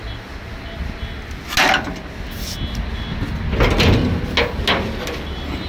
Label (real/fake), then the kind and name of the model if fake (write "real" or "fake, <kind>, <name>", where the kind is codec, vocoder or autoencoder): real